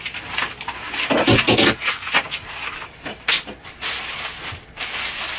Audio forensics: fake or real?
real